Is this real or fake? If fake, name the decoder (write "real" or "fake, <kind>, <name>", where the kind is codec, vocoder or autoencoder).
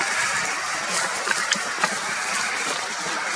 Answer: fake, vocoder, BigVGAN v2